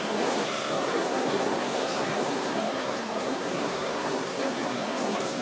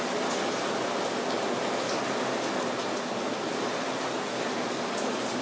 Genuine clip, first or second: second